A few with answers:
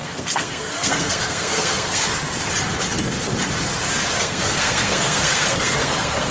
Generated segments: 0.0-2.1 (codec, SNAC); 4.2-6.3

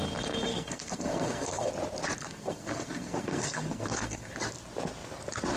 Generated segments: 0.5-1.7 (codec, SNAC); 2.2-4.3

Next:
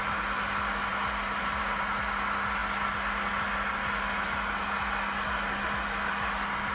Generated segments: none

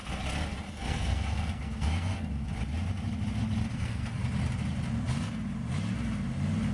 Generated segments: 0.7-2.3 (codec, SNAC); 3.7-4.2

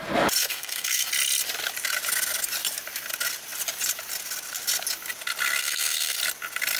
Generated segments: 0.4-1.1 (codec, SNAC); 5.6-6.2